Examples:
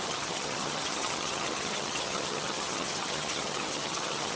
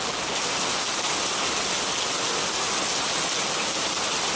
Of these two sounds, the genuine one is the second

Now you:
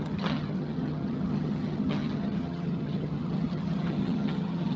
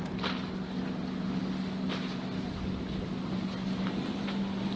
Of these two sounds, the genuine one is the second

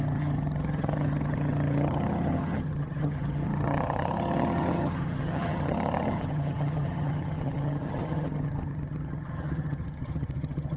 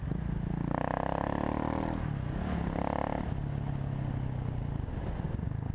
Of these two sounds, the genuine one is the second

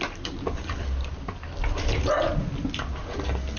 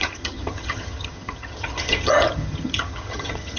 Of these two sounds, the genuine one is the first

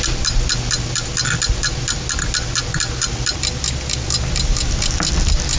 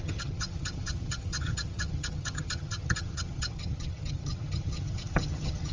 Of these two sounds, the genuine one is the first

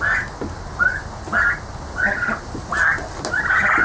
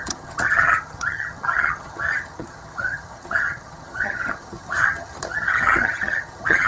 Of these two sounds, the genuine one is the first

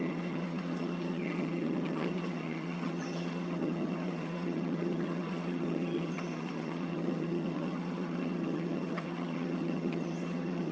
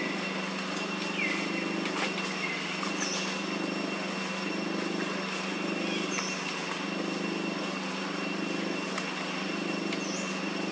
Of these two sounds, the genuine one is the second